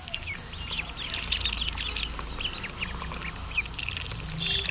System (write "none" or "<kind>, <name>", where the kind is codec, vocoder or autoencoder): none